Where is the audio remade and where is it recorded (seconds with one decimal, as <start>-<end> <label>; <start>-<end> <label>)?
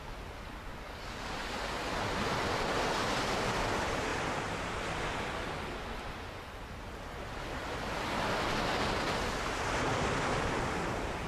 0.0-0.7 recorded; 0.7-1.3 remade; 1.3-11.3 recorded